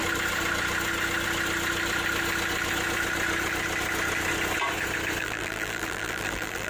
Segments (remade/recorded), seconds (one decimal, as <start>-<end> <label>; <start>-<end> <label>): 0.0-5.2 recorded; 5.2-6.7 remade